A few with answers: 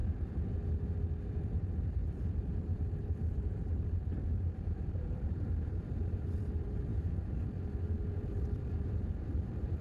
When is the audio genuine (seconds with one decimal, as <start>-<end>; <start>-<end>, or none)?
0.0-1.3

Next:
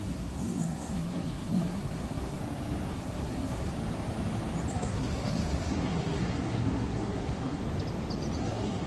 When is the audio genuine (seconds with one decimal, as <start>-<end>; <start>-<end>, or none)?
2.4-2.9; 3.7-4.7; 7.6-8.4

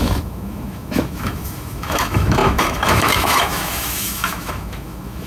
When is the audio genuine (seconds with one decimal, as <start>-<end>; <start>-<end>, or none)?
none

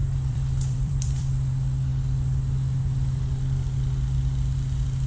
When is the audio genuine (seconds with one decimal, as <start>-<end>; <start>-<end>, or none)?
1.5-5.1

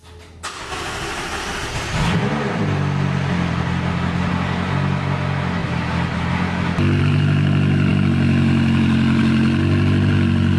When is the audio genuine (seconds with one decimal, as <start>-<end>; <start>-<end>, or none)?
0.0-10.6